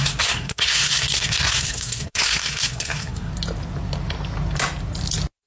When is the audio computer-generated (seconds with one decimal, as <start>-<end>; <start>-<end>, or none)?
0.0-3.3